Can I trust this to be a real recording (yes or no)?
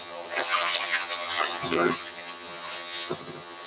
no